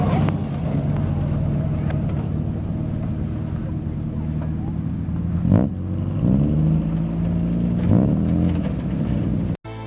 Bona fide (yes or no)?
yes